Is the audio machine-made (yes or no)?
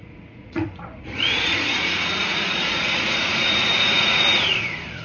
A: yes